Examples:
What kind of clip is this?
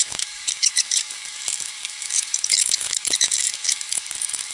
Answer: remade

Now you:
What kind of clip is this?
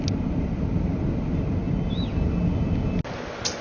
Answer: recorded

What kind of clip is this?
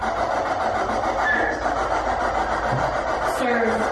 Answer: recorded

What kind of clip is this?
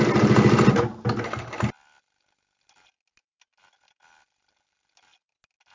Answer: recorded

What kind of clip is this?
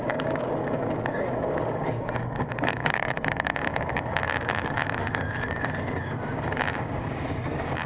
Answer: remade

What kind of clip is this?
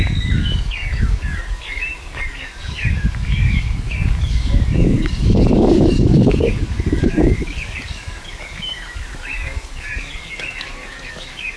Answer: remade